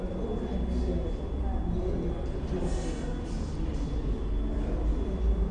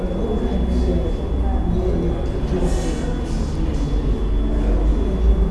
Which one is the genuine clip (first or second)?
second